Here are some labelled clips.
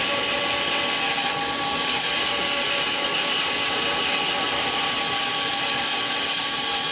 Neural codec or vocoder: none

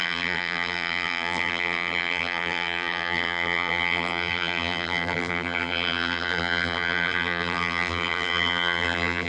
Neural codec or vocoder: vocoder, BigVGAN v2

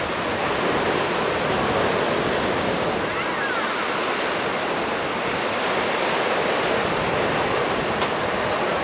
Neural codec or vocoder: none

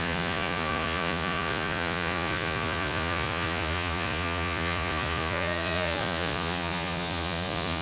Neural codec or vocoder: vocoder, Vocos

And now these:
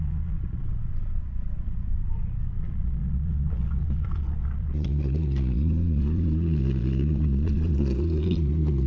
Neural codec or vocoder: vocoder, Vocos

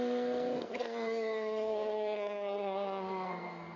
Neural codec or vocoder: codec, SNAC